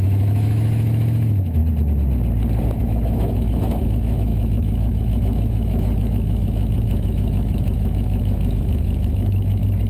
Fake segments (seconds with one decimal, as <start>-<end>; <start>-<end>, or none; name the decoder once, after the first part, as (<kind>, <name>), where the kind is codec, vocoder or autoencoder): 0.0-1.6 (autoencoder, DAC-VAE); 2.8-9.9